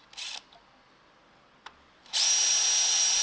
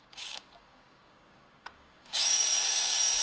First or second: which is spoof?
second